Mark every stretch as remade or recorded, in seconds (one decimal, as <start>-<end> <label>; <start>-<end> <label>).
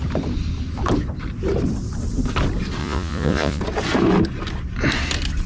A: 0.0-2.8 recorded; 2.8-3.6 remade; 3.6-5.5 recorded